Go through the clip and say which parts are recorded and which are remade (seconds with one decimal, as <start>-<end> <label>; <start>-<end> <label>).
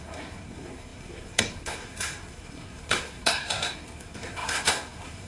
0.0-5.3 remade